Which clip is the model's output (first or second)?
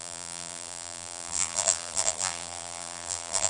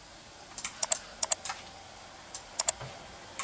first